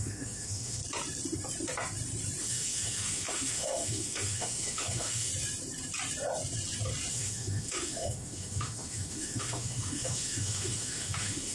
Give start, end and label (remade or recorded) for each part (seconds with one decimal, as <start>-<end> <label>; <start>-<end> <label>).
0.0-0.8 remade; 0.8-2.4 recorded; 2.4-5.3 remade; 5.3-7.1 recorded; 7.1-11.5 remade